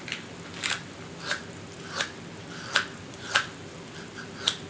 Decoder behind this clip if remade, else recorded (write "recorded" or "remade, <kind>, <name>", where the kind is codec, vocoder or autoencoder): recorded